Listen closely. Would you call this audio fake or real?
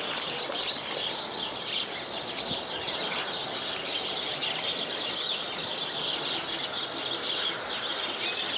real